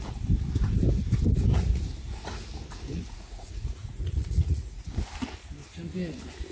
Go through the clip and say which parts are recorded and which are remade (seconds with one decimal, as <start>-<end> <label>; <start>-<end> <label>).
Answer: 0.0-2.9 recorded; 2.9-4.9 remade; 4.9-6.5 recorded